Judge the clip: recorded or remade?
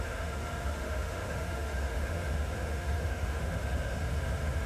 remade